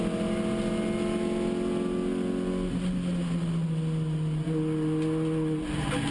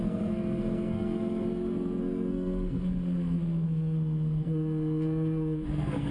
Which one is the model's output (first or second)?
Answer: second